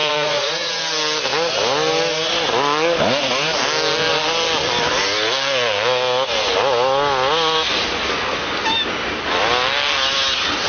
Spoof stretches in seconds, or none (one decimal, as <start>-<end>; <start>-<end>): 0.0-0.8